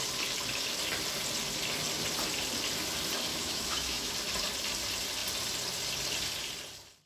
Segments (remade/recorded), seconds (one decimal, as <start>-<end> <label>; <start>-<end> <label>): 0.0-3.3 recorded; 3.3-4.1 remade; 4.1-7.1 recorded